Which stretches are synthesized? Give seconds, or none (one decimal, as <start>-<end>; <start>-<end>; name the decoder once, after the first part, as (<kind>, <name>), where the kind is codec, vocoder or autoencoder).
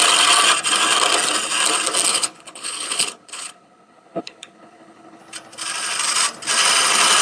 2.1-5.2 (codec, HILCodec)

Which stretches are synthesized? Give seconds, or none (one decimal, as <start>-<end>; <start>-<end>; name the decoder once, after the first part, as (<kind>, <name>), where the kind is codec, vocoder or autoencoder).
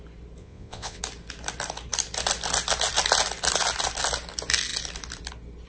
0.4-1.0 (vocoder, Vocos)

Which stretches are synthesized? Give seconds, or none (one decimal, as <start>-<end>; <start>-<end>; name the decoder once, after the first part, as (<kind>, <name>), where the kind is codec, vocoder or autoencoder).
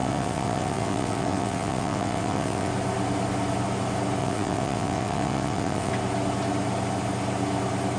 0.0-2.7 (vocoder, WaveNeXt); 4.2-5.9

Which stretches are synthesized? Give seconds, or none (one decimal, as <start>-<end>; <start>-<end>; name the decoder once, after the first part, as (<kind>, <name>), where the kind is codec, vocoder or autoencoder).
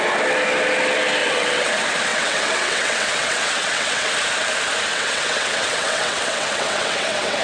1.2-1.7 (vocoder, WaveNeXt); 2.1-4.1; 4.9-7.4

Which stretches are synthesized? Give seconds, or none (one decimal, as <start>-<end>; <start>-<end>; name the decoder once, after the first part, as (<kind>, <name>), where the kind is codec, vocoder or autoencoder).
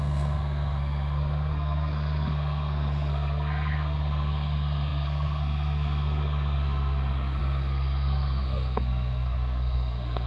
0.0-10.3 (codec, SNAC)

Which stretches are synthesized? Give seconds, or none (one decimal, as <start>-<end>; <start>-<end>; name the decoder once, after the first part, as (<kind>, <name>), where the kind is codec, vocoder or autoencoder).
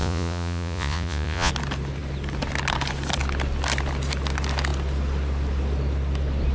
0.0-1.5 (vocoder, Vocos)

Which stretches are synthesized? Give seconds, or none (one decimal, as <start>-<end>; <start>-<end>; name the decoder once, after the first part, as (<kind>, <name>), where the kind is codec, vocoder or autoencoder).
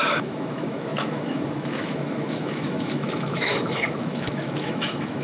0.0-5.2 (autoencoder, DAC-VAE)